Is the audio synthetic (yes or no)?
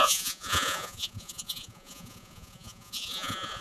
yes